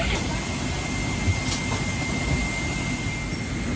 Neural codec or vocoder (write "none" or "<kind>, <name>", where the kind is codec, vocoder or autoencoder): none